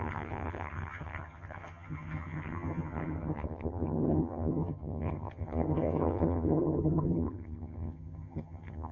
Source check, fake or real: fake